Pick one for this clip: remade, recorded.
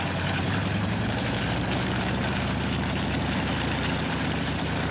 remade